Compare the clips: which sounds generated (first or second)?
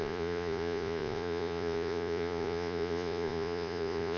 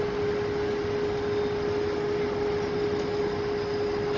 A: first